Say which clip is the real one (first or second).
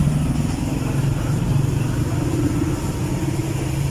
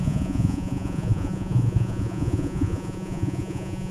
first